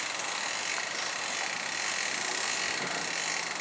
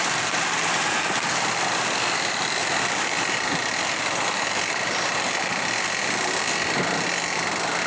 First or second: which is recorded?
first